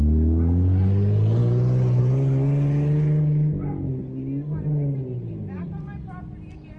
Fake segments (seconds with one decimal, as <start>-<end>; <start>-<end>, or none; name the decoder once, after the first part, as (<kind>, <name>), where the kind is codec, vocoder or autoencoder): none